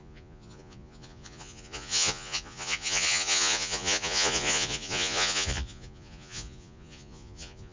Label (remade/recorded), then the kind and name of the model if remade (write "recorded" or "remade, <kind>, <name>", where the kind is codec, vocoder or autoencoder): remade, vocoder, Vocos